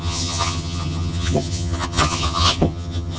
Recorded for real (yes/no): no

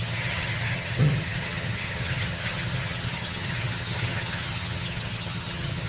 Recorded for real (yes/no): no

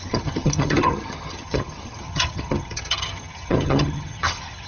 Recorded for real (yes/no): no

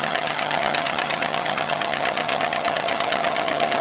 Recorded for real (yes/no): no